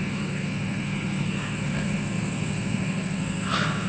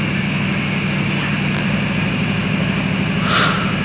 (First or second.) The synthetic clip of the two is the first